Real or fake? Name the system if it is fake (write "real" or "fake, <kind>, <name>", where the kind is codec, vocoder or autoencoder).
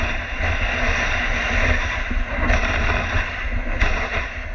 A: real